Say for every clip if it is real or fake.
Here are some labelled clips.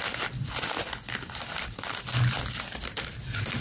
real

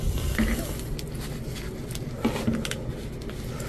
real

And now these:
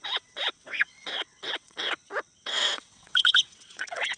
fake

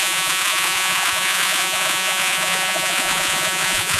fake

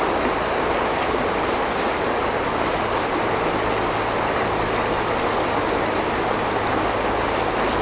real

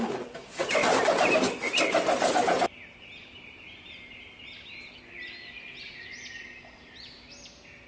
real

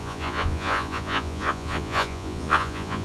fake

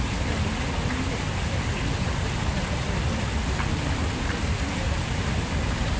real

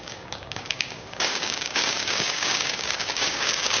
fake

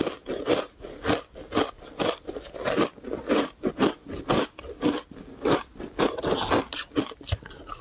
real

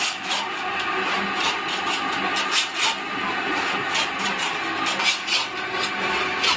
real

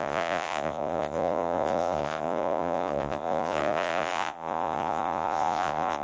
fake